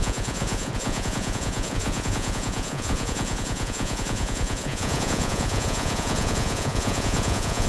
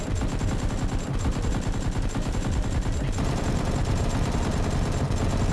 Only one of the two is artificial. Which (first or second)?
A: first